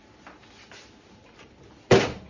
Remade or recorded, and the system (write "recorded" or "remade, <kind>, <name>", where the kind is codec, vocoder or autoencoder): recorded